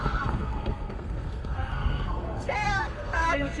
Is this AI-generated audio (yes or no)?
yes